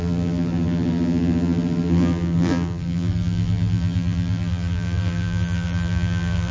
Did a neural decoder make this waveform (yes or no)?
yes